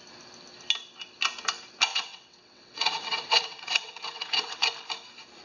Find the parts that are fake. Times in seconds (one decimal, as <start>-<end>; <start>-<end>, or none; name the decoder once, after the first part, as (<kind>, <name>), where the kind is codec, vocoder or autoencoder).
1.9-4.7 (vocoder, WaveNeXt)